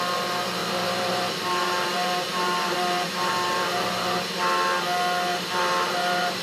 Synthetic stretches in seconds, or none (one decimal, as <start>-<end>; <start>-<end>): 0.6-4.4; 5.3-6.4